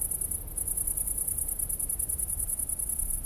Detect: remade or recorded recorded